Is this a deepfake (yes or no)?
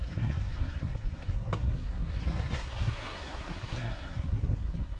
yes